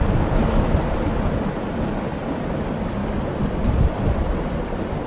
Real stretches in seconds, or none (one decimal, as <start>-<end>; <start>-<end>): 0.0-5.1

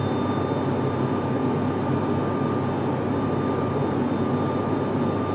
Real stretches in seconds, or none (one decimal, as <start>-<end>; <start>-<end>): 0.0-5.3

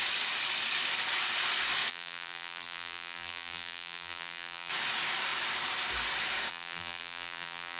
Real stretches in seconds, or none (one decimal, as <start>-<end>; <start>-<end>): 0.0-1.9; 4.7-6.5

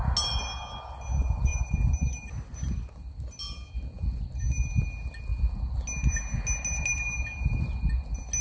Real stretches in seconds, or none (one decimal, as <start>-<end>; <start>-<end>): 0.0-8.4